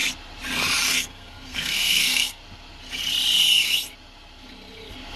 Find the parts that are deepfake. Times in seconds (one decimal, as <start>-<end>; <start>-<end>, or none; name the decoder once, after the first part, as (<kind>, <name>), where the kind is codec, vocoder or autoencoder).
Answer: 0.9-2.4 (codec, SNAC)